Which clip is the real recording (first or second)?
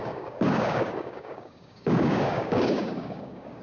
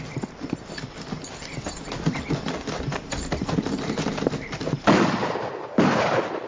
second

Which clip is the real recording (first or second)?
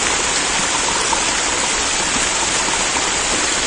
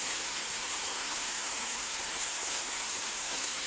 first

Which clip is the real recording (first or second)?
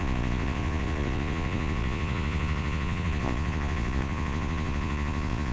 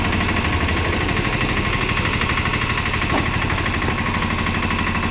second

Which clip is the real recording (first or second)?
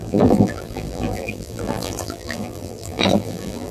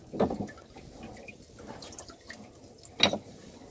second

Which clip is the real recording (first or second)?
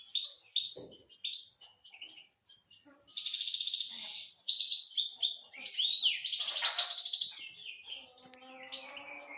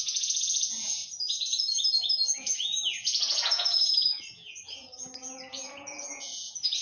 first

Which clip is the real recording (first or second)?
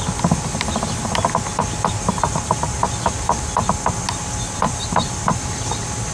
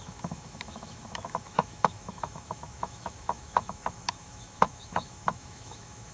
first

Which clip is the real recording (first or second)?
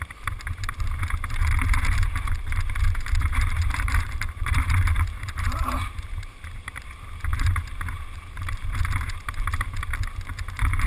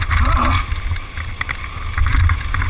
second